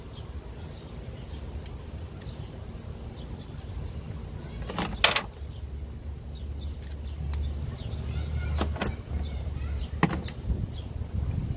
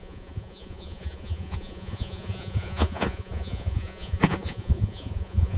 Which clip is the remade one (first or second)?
second